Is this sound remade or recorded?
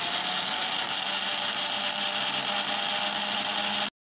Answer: recorded